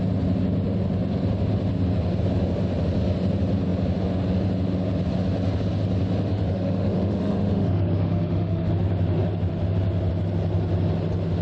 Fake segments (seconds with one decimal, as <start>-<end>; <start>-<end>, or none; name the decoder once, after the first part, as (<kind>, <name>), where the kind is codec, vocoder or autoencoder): 6.3-8.7 (autoencoder, DAC-VAE)